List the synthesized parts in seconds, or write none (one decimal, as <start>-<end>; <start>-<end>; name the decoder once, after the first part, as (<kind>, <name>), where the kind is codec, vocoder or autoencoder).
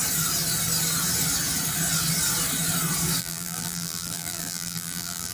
3.2-5.3 (vocoder, BigVGAN v2)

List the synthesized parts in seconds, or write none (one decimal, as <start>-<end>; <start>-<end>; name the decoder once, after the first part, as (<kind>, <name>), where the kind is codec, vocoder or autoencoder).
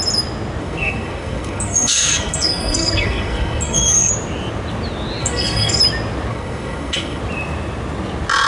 0.6-4.1 (codec, SNAC); 5.2-5.8; 6.3-7.2